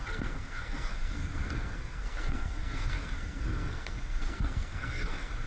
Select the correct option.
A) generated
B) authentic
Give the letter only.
A